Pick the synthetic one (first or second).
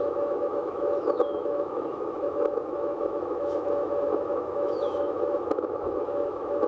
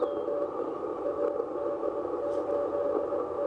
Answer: first